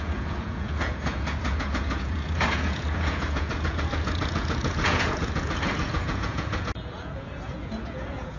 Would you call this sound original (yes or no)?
no